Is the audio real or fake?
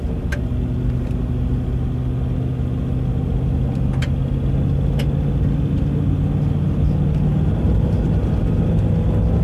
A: real